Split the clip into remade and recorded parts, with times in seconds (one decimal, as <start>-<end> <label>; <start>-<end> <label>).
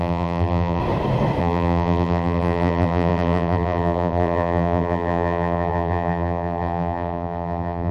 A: 0.0-0.8 remade; 0.8-1.4 recorded; 1.4-7.9 remade